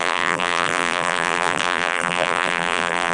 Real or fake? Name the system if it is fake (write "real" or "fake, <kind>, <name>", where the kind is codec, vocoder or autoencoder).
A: fake, vocoder, BigVGAN v2